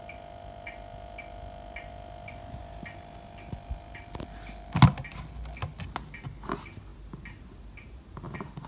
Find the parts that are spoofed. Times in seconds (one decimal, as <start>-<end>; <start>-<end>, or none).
2.6-3.7